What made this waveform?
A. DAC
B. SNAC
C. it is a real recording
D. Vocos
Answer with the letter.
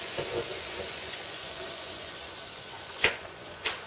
D